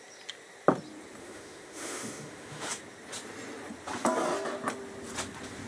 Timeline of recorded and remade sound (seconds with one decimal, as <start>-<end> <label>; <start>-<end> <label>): 0.0-1.2 recorded; 1.2-2.7 remade; 2.7-5.7 recorded